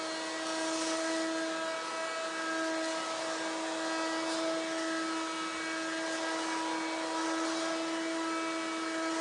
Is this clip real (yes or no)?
yes